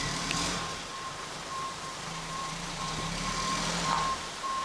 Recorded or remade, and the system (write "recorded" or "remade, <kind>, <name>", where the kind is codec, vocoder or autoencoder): remade, vocoder, BigVGAN v2